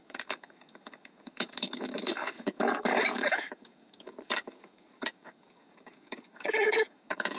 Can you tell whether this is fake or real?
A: fake